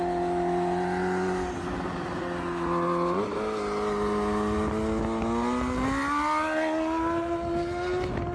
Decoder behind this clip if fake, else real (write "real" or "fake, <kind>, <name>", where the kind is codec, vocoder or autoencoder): real